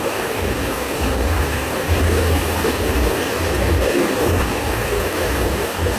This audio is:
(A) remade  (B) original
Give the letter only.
A